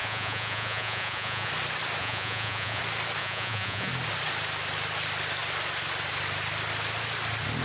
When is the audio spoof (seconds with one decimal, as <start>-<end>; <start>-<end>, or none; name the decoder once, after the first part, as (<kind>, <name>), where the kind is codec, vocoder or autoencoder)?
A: 0.0-1.5 (vocoder, Vocos); 2.0-2.8; 3.2-3.9